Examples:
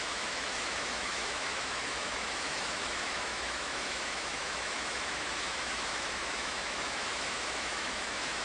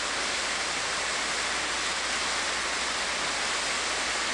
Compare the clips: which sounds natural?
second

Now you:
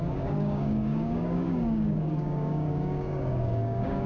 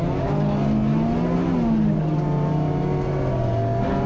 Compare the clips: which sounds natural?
second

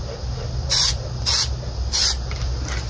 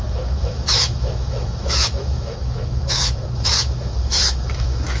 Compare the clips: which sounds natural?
first